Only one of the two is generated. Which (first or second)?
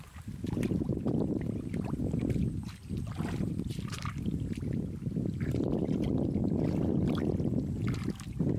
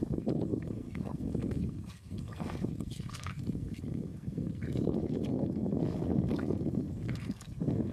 second